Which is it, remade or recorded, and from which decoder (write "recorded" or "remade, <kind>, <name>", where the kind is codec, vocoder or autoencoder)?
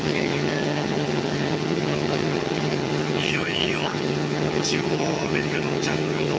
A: remade, vocoder, HiFi-GAN